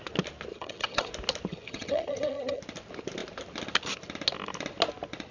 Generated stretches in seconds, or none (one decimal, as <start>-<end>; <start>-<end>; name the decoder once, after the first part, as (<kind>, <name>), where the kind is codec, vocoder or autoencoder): 0.5-1.1 (vocoder, HiFi-GAN); 1.5-2.6